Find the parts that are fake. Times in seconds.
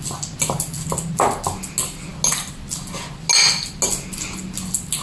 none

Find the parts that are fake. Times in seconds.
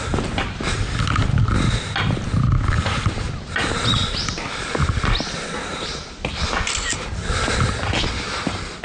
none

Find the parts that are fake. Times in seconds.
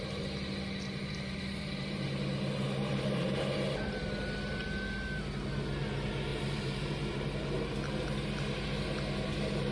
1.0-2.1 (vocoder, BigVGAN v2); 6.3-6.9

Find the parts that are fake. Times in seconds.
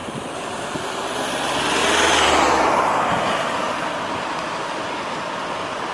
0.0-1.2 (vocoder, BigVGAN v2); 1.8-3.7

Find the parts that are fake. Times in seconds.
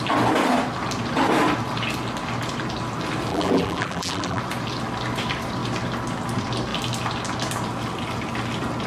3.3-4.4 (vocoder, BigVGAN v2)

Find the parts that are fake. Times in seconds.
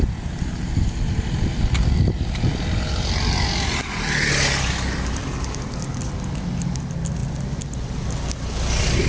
none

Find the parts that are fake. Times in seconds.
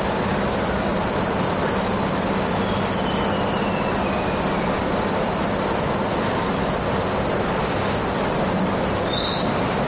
0.9-1.9 (vocoder, BigVGAN v2)